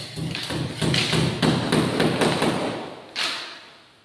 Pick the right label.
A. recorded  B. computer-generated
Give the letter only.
A